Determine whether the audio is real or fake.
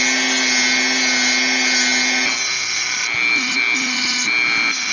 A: real